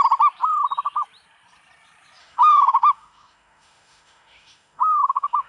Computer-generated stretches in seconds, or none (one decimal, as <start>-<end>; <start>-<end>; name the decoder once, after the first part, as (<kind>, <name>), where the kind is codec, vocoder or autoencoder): 2.2-5.5 (autoencoder, DAC-VAE)